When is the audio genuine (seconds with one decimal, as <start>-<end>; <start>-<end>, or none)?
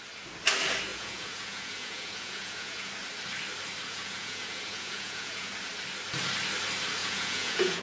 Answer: 0.0-0.9; 2.9-3.9; 5.5-7.0